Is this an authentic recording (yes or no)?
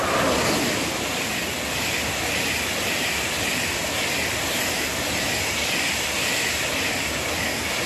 yes